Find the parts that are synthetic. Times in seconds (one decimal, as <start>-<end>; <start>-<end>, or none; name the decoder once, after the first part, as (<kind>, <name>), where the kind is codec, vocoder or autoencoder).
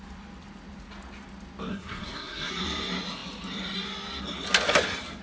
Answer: 1.7-2.5 (codec, SNAC)